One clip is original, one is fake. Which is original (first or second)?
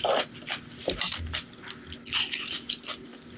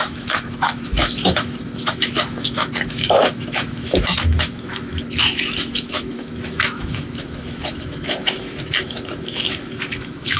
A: first